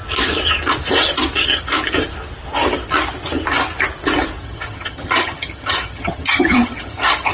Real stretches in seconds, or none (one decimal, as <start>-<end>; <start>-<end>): 0.0-4.4